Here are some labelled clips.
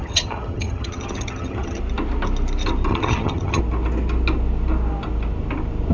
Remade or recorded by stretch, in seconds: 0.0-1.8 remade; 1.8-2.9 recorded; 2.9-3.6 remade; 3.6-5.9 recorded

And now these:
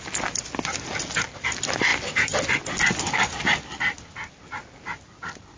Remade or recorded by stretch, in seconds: 0.0-5.6 recorded

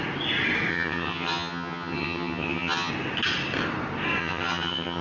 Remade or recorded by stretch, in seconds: 0.0-0.7 recorded; 0.7-2.9 remade; 2.9-4.2 recorded; 4.2-5.0 remade

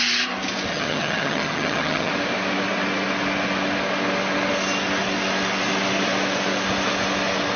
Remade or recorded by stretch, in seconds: 0.0-0.7 recorded; 0.7-2.1 remade; 2.1-7.6 recorded

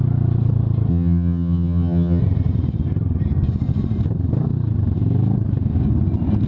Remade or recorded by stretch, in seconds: 0.0-0.9 recorded; 0.9-2.2 remade; 2.2-6.5 recorded

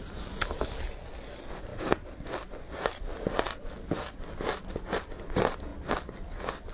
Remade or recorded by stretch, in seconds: 0.0-6.7 recorded

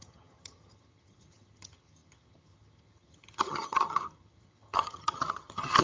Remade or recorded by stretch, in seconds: 0.0-5.8 remade